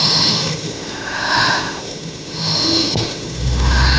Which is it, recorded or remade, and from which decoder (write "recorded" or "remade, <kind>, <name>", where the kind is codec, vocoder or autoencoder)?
remade, autoencoder, DAC-VAE